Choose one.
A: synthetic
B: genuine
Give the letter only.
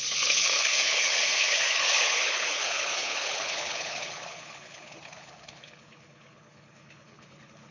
A